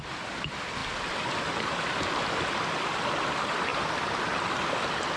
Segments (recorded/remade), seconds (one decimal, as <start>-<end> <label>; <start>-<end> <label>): 0.0-0.8 recorded; 0.8-3.3 remade; 3.3-3.7 recorded; 3.7-4.7 remade; 4.7-5.2 recorded